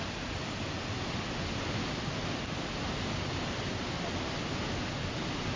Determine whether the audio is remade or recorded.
recorded